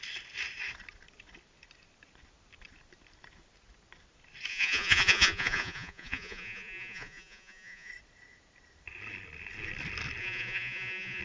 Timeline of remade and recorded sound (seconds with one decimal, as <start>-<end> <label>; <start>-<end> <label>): 0.0-4.5 recorded; 4.5-7.9 remade; 7.9-10.2 recorded; 10.2-11.2 remade